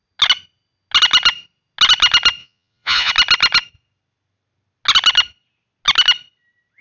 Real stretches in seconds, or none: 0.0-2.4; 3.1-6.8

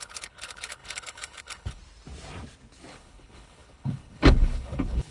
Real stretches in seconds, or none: 1.8-2.9

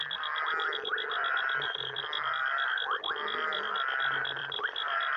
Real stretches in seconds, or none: 1.8-4.4

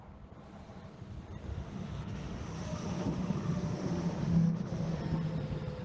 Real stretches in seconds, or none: 0.0-1.5; 5.0-5.8

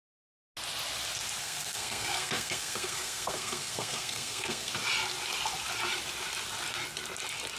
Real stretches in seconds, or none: 0.0-1.4; 4.7-7.6

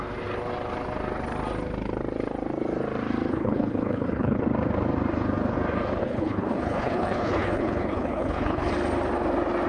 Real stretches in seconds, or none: 0.0-3.3; 4.4-6.0; 8.7-9.7

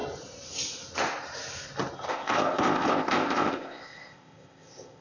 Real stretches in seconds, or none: 0.0-2.1

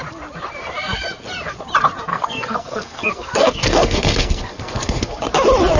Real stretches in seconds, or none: 0.0-2.1; 5.2-5.8